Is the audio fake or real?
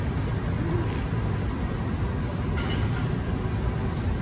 real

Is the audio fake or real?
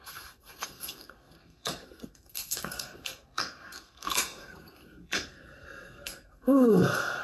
fake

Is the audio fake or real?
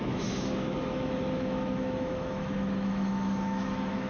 fake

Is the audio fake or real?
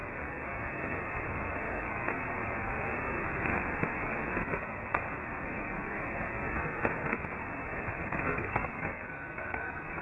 fake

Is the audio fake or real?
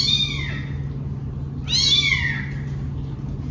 real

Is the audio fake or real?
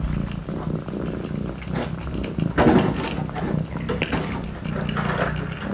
real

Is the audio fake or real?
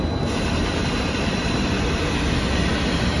real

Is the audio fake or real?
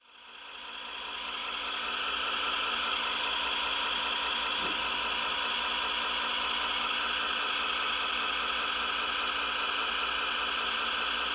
real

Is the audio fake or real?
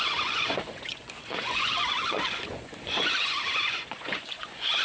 fake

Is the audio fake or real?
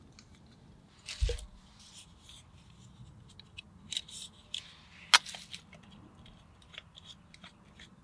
real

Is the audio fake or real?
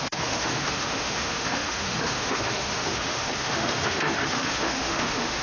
fake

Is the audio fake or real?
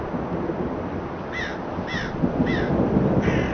real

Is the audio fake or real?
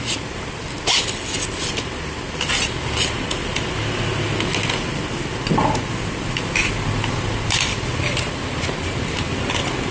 real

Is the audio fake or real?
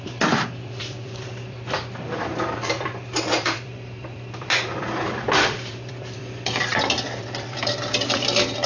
fake